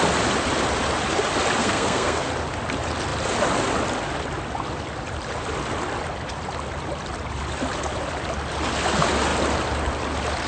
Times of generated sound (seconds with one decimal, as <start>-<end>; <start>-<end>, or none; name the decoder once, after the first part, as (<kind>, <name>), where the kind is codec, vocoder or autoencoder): 1.6-2.3 (codec, SNAC)